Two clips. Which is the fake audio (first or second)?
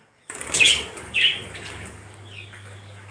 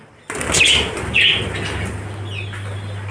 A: first